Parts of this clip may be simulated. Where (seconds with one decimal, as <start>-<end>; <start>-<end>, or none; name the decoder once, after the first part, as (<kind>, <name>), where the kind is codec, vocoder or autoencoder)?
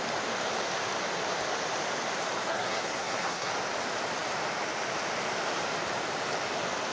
2.5-3.5 (codec, SNAC)